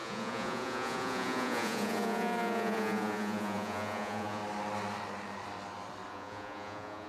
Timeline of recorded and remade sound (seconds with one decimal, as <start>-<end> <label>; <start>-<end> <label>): 0.0-4.4 remade; 4.4-6.1 recorded; 6.1-7.1 remade